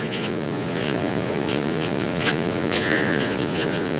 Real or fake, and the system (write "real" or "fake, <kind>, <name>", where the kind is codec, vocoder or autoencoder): fake, vocoder, Vocos